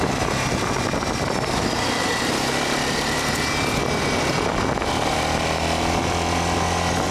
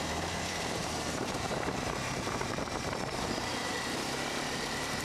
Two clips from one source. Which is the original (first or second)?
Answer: first